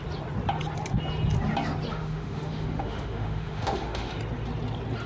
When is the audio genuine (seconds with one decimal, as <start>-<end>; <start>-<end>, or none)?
0.0-1.9; 4.1-5.1